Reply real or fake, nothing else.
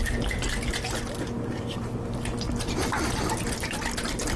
real